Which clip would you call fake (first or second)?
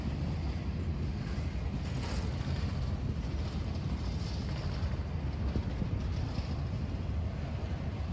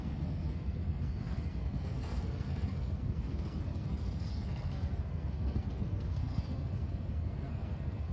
second